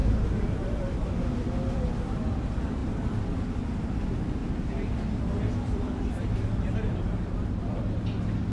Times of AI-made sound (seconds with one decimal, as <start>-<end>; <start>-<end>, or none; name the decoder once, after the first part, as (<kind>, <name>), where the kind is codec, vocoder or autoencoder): 0.0-1.1 (vocoder, BigVGAN v2); 2.8-3.6; 4.4-7.9